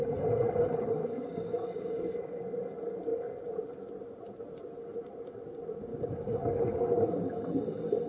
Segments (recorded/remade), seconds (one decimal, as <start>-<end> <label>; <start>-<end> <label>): 0.0-1.0 recorded; 1.0-2.4 remade; 2.4-5.9 recorded; 5.9-6.7 remade; 6.7-8.1 recorded